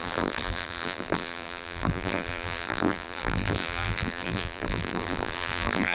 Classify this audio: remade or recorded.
remade